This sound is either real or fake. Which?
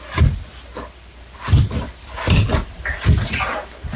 real